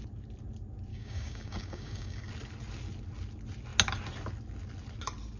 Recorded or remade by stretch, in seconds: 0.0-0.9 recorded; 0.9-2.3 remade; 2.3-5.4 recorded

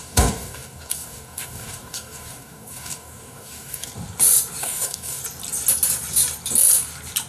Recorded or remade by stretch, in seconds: 0.0-3.9 remade; 3.9-4.6 recorded; 4.6-5.2 remade; 5.2-7.3 recorded

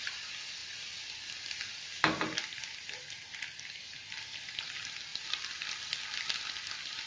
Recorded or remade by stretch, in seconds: 0.0-7.1 recorded